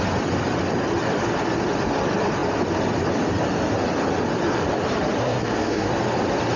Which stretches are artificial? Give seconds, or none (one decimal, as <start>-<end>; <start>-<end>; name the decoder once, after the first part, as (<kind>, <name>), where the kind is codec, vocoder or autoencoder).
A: 5.2-5.9 (codec, SNAC)

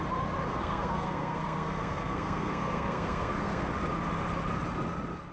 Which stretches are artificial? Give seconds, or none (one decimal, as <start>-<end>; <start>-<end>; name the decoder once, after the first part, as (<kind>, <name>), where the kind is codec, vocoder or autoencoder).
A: 0.5-3.7 (codec, SNAC)

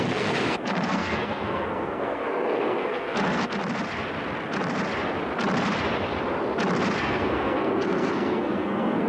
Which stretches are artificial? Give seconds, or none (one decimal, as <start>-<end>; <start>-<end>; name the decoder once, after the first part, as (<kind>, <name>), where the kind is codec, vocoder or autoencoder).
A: 0.0-3.6 (codec, SNAC); 7.0-9.1

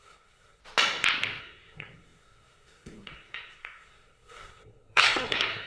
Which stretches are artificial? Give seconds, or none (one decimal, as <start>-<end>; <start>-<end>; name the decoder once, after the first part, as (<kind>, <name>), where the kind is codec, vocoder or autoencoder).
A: 0.0-0.6 (codec, SNAC); 1.4-5.7

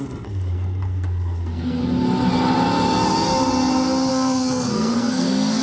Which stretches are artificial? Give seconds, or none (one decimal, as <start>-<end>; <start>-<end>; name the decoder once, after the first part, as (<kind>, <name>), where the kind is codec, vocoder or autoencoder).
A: 0.0-1.8 (codec, SNAC); 4.1-5.6

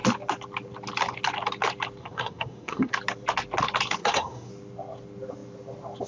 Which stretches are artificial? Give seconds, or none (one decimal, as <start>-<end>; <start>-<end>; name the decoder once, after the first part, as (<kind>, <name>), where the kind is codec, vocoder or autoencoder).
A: 2.0-2.9 (codec, SNAC); 4.0-4.5

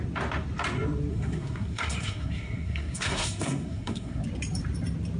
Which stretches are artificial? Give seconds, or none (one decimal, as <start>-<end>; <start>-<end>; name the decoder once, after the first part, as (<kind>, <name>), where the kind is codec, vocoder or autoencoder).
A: 1.1-4.2 (codec, SNAC)

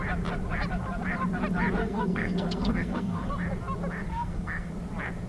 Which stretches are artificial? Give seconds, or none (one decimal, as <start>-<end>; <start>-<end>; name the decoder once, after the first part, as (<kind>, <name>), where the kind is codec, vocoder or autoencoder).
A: 1.8-3.3 (codec, SNAC); 4.1-4.7